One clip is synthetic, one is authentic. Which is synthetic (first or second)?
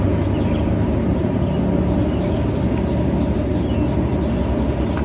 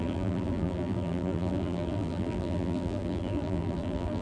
second